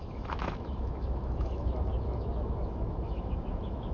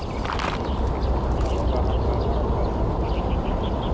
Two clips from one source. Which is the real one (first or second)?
second